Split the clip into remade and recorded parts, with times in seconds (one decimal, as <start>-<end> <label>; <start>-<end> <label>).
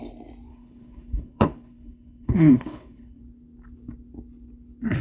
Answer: 0.0-0.5 recorded; 0.5-3.2 remade; 3.2-5.0 recorded